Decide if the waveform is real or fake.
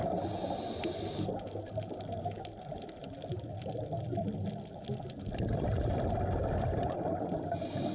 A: real